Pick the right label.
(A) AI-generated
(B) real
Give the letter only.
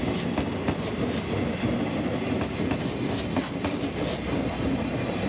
B